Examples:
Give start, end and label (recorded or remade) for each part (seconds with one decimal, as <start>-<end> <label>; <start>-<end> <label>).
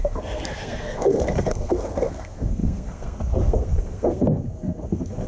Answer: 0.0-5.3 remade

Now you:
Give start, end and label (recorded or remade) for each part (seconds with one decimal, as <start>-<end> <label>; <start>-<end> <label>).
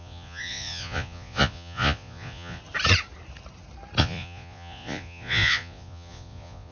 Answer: 0.0-2.6 remade; 2.6-4.0 recorded; 4.0-6.7 remade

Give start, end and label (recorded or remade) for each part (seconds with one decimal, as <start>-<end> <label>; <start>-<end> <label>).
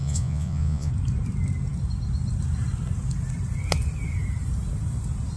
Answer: 0.0-0.9 remade; 0.9-5.4 recorded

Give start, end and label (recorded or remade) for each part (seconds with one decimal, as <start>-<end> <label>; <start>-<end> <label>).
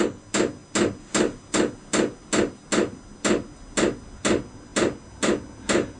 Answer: 0.0-6.0 recorded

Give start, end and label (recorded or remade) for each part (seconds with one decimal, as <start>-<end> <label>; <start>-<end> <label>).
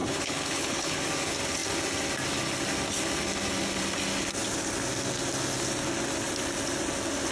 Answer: 0.0-1.0 remade; 1.0-7.3 recorded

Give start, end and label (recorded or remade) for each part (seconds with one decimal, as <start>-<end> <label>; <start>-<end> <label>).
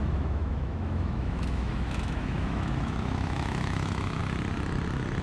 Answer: 0.0-4.2 remade; 4.2-5.2 recorded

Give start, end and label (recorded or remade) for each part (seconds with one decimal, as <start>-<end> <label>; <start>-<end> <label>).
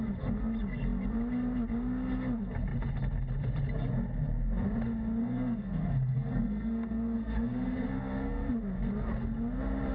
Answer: 0.0-5.2 recorded; 5.2-8.5 remade; 8.5-9.9 recorded